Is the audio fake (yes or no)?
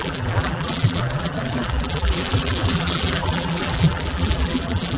yes